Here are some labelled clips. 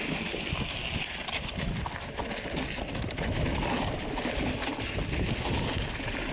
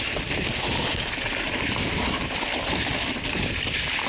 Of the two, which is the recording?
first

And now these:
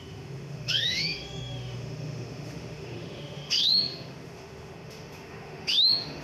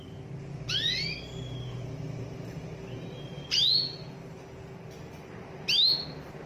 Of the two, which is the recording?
second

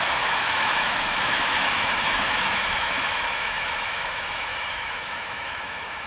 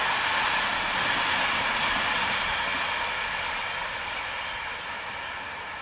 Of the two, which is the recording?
second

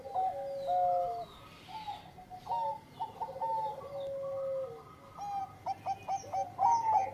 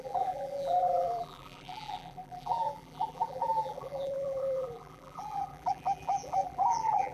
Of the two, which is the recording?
first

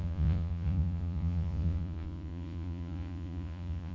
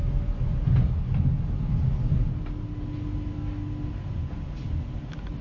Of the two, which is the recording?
second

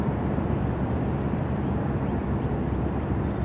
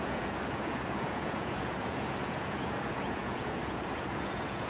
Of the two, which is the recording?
first